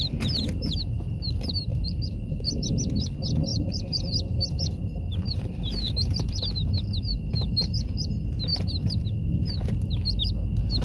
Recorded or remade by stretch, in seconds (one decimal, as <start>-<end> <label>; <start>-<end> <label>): 0.0-1.7 recorded; 1.7-2.7 remade; 2.7-3.5 recorded; 3.5-8.1 remade; 8.1-10.8 recorded